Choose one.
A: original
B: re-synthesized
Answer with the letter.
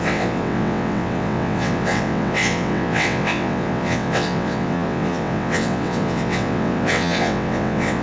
B